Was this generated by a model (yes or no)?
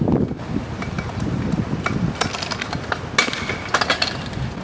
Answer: no